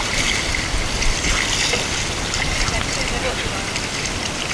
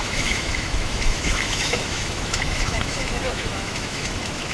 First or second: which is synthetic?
second